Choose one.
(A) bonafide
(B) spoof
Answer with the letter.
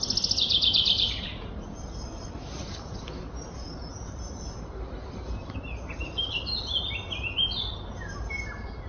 A